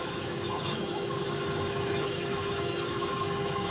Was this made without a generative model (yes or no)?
no